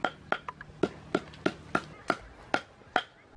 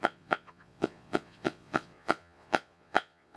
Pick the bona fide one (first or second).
first